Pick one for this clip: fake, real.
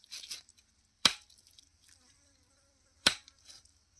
fake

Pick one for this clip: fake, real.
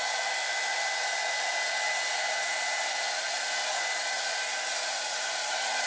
real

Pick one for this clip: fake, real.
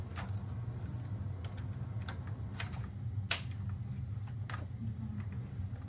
real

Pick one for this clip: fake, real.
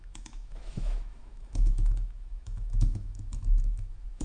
fake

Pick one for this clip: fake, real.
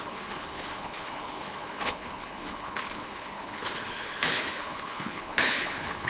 fake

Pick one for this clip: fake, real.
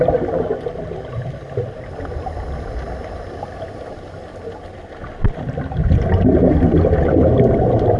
real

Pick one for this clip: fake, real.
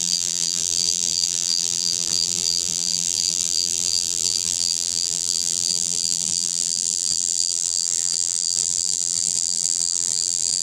fake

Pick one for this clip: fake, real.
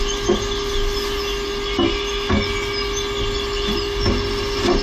real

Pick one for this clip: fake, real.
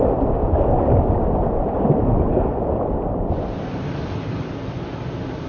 real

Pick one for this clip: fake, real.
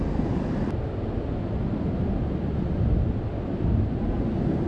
real